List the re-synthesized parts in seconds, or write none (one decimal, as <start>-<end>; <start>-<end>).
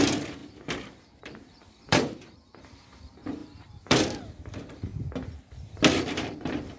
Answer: 0.0-0.4; 1.2-4.9; 6.0-6.8